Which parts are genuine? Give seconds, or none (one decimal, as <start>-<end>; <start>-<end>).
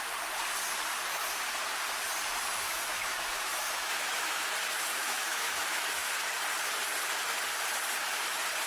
0.0-2.5; 4.4-4.9; 6.1-8.7